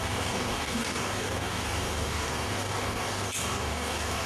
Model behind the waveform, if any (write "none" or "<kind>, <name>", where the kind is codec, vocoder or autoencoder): codec, DAC